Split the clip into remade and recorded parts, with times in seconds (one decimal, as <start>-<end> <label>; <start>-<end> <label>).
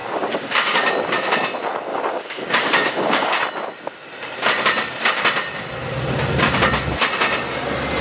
0.0-0.9 remade; 0.9-1.9 recorded; 1.9-3.4 remade; 3.4-8.0 recorded